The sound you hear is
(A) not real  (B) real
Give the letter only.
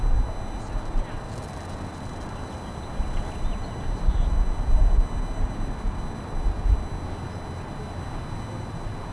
B